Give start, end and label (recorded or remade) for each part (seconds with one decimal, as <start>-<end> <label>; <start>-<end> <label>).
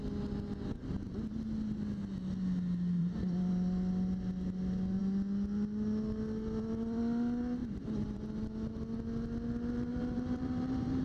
0.0-3.0 recorded; 3.0-3.5 remade; 3.5-7.6 recorded; 7.6-8.2 remade; 8.2-9.9 recorded; 9.9-11.0 remade